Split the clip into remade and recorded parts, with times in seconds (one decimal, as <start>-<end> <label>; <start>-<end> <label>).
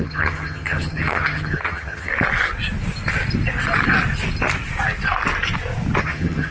0.0-2.1 remade; 2.1-6.0 recorded; 6.0-6.5 remade